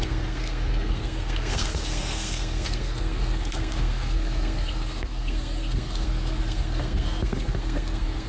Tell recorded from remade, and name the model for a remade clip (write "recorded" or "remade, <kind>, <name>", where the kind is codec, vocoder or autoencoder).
remade, codec, SNAC